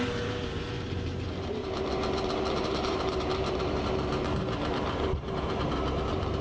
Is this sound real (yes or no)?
no